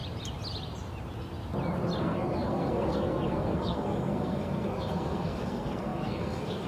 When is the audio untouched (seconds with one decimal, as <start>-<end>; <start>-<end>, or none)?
0.0-2.0